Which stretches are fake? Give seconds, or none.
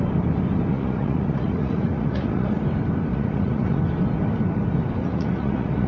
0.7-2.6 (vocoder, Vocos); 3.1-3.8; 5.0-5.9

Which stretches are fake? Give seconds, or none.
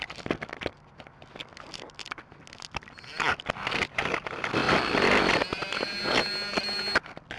none